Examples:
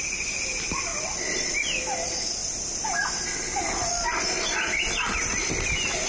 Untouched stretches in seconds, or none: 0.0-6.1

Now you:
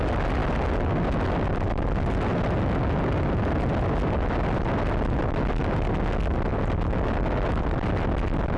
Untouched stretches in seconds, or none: 0.0-8.6